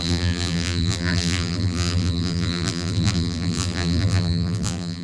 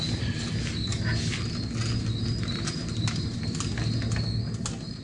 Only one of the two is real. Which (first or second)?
second